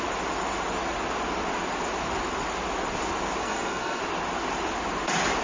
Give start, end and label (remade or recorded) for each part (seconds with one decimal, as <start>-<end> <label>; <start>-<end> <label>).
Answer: 0.0-3.4 recorded; 3.4-4.0 remade; 4.0-5.4 recorded